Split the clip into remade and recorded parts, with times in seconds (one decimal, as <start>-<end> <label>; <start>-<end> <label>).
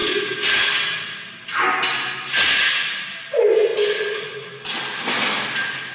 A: 0.0-5.9 recorded